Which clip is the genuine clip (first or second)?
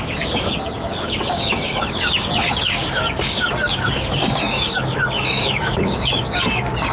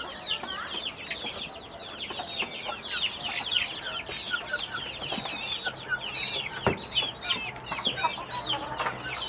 second